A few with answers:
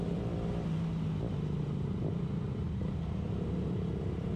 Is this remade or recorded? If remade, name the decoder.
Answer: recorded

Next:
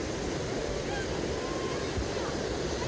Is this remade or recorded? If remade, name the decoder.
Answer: recorded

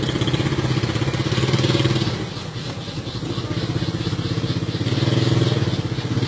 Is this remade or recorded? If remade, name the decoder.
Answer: recorded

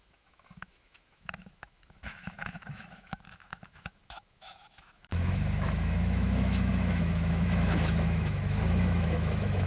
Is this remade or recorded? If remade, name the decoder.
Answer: remade, autoencoder, DAC-VAE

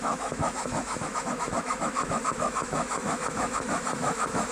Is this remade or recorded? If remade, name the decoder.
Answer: remade, autoencoder, DAC-VAE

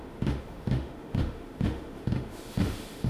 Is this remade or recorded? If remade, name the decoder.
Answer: remade, autoencoder, DAC-VAE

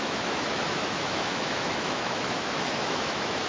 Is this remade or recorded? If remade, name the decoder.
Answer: remade, autoencoder, DAC-VAE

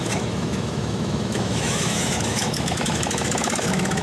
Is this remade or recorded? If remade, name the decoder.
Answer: remade, autoencoder, DAC-VAE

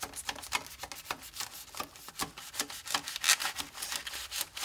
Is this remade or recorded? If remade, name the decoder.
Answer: recorded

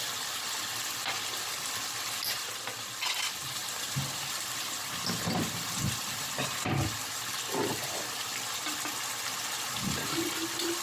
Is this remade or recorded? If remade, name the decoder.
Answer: recorded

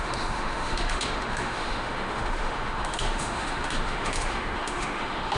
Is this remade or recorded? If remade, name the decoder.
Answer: remade, autoencoder, DAC-VAE